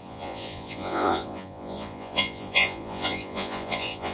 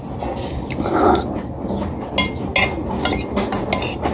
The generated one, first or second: first